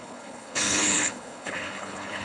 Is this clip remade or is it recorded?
remade